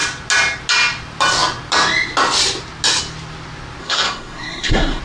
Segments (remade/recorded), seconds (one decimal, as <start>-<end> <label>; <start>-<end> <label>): 0.0-3.8 recorded; 3.8-5.0 remade